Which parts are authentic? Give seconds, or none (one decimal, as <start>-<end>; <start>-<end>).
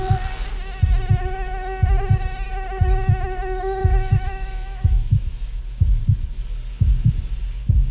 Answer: 0.0-3.8; 5.6-7.9